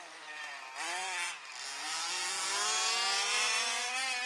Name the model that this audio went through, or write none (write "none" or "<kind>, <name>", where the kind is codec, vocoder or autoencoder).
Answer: none